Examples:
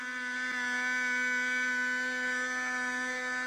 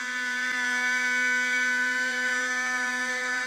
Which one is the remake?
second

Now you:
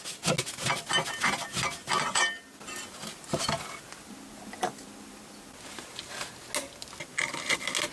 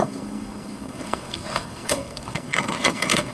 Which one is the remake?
second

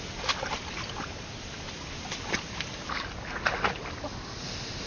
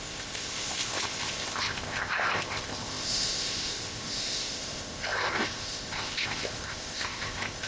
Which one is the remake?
second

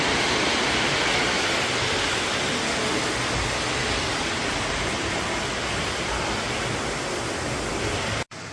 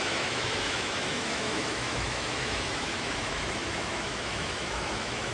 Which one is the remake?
second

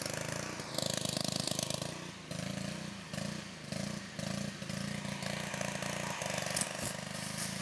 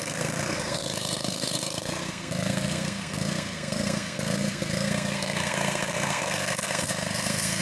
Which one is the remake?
second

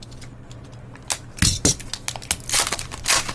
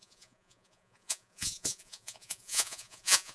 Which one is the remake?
second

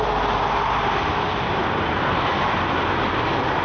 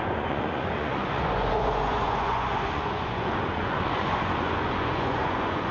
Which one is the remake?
second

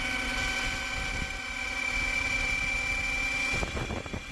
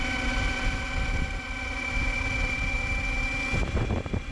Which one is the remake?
second